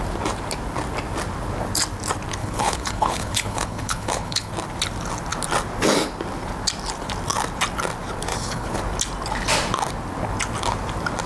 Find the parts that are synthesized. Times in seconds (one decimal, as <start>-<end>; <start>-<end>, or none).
2.4-4.5; 8.3-8.8